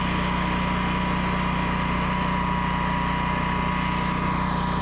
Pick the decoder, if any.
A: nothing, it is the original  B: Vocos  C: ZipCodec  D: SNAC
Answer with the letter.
A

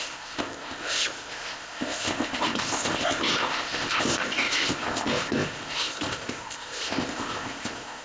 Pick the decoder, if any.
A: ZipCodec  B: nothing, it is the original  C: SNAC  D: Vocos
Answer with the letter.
A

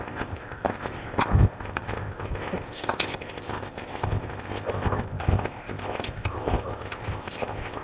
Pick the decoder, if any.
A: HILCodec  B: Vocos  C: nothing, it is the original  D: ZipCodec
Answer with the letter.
D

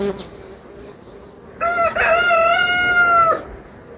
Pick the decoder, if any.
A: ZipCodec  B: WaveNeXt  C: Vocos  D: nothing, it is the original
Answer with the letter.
D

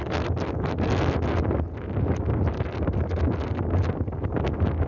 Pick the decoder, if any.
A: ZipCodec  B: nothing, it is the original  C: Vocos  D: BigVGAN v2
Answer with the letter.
B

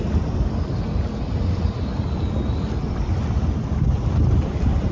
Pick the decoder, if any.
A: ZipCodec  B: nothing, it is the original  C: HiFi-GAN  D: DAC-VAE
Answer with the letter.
B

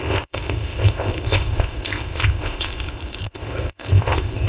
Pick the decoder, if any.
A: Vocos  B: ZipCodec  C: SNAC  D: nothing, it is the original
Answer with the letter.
B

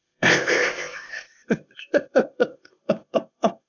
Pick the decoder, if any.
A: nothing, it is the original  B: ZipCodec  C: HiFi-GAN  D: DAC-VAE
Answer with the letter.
B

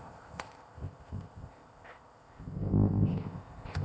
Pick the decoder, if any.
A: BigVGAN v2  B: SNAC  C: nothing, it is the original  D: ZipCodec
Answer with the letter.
D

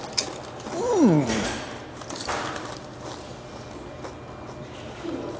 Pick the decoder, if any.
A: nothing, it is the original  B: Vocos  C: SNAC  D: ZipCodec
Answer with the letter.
A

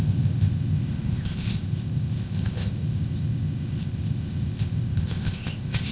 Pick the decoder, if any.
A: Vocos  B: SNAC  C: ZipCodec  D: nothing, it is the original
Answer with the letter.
C